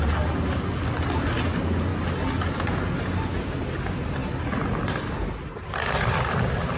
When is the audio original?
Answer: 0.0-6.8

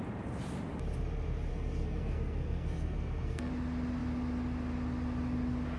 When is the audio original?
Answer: 0.0-1.5; 3.5-5.8

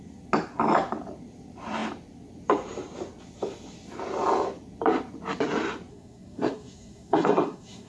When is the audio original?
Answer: 0.0-5.9